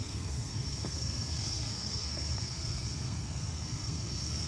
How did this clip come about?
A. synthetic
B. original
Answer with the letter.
A